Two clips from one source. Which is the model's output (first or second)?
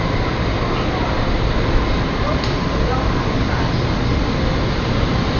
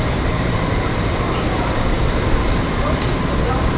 second